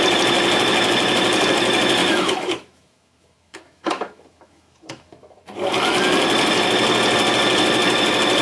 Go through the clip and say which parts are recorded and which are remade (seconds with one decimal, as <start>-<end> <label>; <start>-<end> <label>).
0.0-2.0 recorded; 2.0-5.4 remade; 5.4-8.4 recorded